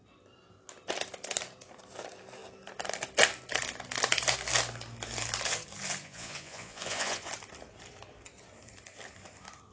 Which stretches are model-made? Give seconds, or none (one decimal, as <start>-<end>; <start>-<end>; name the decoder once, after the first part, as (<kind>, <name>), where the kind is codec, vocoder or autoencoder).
6.0-7.3 (vocoder, Vocos)